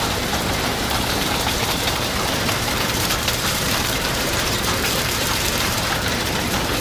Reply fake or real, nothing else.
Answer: fake